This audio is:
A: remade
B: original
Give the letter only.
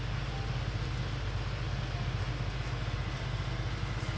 B